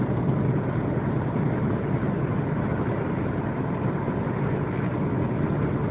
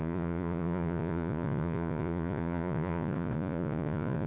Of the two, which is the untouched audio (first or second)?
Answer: first